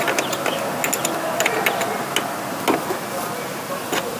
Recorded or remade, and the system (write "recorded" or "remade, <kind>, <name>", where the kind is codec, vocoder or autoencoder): recorded